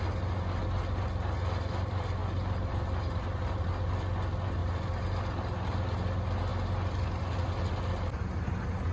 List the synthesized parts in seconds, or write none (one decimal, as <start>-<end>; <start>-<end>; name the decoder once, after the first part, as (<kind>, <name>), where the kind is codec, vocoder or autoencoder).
2.2-3.7 (vocoder, BigVGAN v2); 4.6-5.1